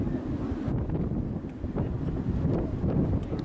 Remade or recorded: recorded